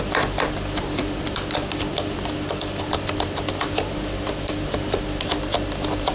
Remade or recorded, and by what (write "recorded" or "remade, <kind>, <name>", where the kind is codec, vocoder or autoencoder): recorded